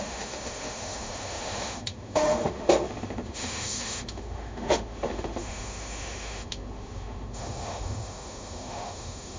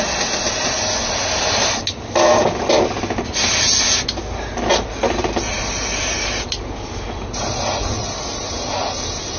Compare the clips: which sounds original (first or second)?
second